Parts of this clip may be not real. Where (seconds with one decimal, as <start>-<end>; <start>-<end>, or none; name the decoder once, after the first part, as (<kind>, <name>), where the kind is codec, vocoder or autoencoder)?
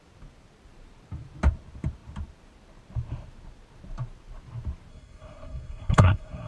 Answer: 4.9-6.5 (codec, SNAC)